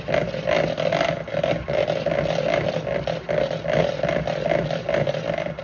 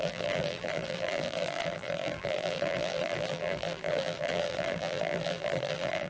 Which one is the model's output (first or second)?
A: second